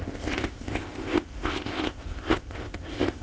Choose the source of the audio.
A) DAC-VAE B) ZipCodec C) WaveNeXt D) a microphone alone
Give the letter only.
B